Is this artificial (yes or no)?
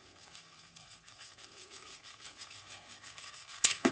yes